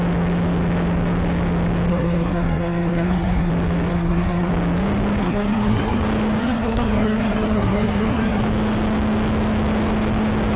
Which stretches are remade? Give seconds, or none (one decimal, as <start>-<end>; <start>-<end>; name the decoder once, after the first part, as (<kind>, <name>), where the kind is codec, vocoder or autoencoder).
1.9-3.5 (codec, SNAC); 3.9-4.5; 5.2-6.0; 6.4-8.4